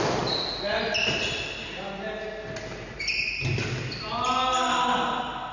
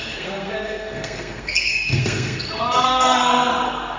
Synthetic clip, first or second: second